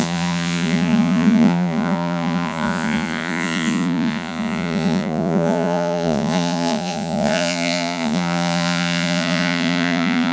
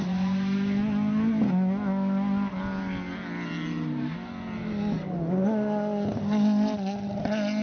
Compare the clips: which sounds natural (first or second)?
second